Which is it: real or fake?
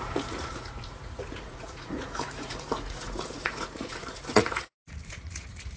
fake